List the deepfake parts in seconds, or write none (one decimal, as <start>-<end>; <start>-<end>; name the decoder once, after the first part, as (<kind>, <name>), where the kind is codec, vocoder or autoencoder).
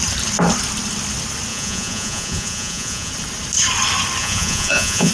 1.5-3.1 (vocoder, Vocos); 4.2-5.1